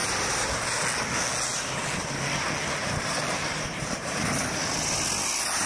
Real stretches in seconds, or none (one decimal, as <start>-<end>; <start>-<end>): 0.8-1.5; 2.2-2.8; 4.6-5.7